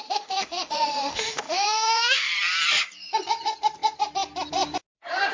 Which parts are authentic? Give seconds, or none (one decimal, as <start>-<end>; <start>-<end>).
2.3-5.3